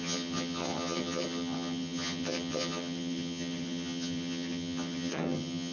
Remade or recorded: remade